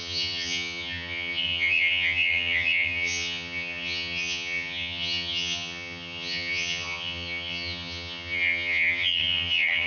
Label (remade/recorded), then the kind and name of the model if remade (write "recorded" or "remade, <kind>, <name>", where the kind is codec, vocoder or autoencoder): remade, vocoder, HiFi-GAN